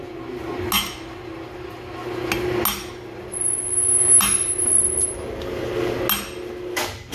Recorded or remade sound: recorded